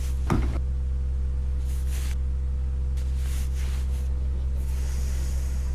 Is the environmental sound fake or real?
real